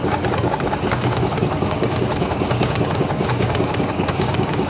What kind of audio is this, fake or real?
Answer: fake